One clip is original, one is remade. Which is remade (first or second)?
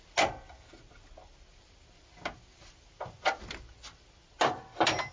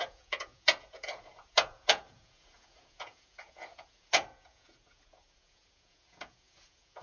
second